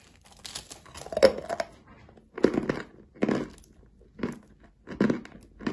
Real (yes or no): yes